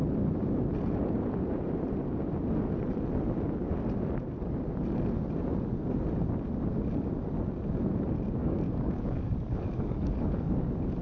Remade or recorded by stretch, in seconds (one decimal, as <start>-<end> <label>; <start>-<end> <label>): 0.0-8.4 recorded; 8.4-11.0 remade